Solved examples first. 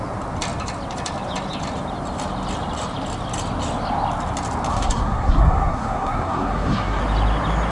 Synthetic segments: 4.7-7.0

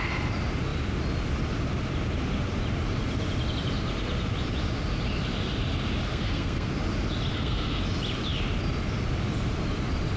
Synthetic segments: 6.1-6.7; 7.3-7.8

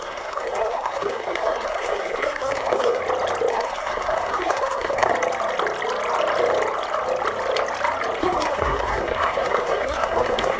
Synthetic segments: 0.0-3.0; 3.5-5.1; 8.2-10.6

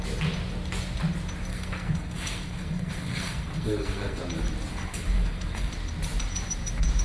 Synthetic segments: 1.5-4.2; 4.7-5.7

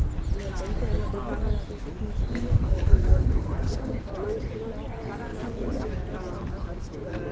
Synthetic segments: 2.3-4.1